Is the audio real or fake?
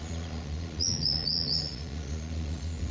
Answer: fake